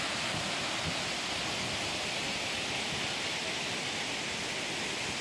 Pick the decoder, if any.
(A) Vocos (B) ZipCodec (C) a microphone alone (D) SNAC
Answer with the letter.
C